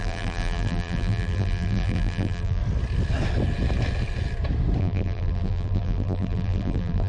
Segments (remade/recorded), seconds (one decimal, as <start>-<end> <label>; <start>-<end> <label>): 0.0-2.6 remade; 2.6-4.8 recorded; 4.8-7.1 remade